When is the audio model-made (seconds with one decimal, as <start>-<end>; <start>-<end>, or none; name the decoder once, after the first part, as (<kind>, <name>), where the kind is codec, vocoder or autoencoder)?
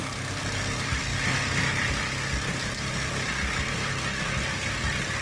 0.0-1.1 (vocoder, BigVGAN v2); 2.2-3.3